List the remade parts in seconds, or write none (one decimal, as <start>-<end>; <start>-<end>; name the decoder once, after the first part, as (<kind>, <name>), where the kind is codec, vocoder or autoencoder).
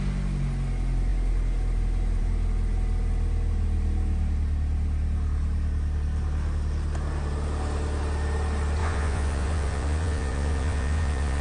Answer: 8.8-11.4 (vocoder, Vocos)